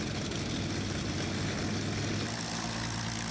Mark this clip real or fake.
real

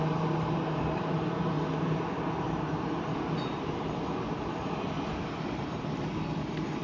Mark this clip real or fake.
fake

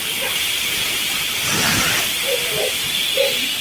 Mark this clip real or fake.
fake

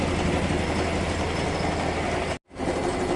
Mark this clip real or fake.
real